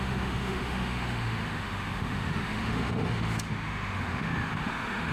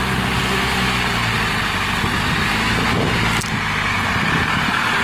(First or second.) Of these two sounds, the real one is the second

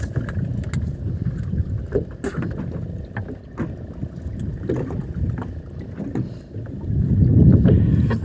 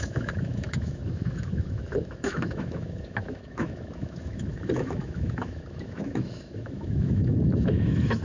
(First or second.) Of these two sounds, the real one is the first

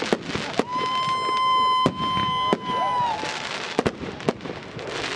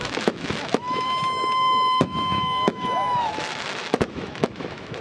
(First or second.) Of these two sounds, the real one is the first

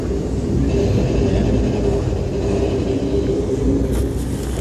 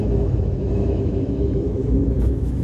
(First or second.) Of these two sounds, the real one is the first